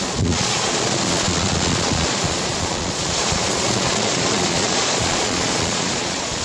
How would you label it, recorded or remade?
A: remade